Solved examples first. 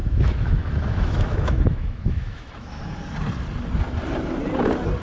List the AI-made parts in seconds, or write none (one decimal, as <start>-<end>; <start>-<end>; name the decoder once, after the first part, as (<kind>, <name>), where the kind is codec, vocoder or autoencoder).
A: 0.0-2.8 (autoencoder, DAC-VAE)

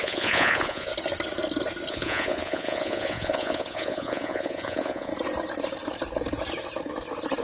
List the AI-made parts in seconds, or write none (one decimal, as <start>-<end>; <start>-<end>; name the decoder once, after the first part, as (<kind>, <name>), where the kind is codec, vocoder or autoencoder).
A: 0.0-0.9 (vocoder, Vocos); 1.9-5.1

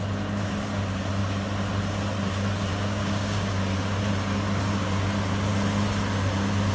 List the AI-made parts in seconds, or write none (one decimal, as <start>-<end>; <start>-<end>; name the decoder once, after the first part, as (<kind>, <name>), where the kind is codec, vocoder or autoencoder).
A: 2.7-3.5 (codec, DAC)

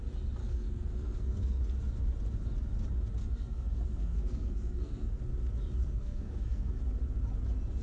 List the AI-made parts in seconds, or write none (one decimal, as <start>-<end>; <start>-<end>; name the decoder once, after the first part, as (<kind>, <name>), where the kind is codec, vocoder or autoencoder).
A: 0.4-1.6 (codec, SNAC); 3.2-5.2; 5.8-6.7

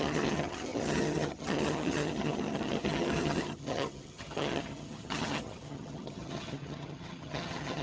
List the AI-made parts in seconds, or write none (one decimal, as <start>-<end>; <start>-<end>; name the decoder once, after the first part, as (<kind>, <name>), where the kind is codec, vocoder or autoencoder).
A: 0.0-7.8 (vocoder, HiFi-GAN)